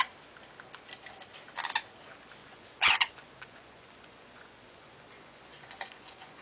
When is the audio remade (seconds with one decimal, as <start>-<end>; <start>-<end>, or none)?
2.4-6.4